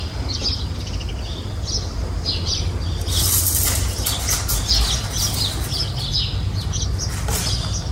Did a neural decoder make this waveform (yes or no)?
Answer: no